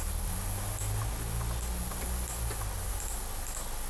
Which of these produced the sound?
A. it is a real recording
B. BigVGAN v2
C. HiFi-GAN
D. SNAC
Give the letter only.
A